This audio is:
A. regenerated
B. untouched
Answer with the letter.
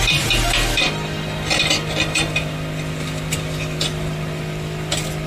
A